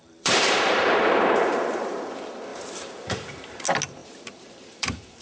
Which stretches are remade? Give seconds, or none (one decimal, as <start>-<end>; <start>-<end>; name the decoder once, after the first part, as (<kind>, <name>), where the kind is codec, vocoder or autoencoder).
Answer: 0.0-1.6 (vocoder, BigVGAN v2); 2.5-3.6; 4.0-5.2